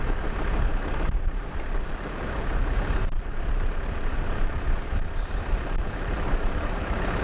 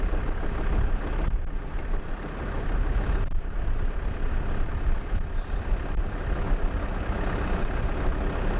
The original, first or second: second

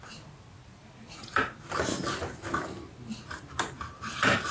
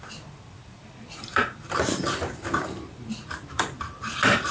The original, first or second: first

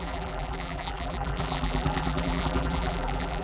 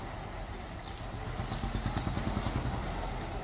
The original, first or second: second